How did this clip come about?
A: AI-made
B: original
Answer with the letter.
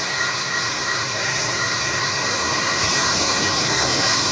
A